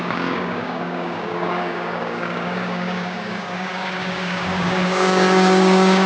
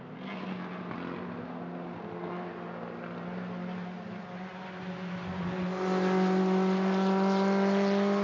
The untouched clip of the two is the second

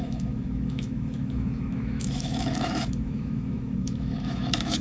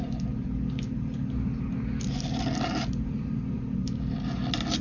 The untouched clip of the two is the second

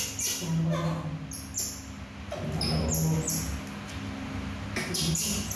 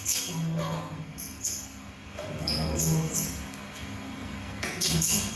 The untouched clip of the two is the first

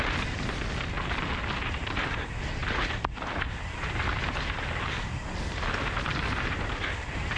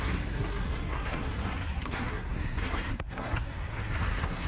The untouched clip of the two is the first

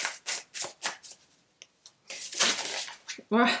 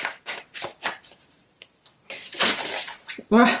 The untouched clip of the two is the first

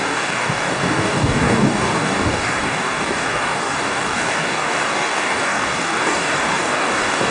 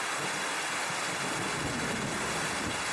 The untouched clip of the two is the second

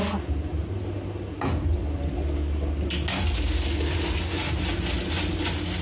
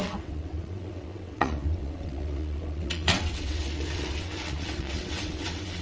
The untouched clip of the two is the first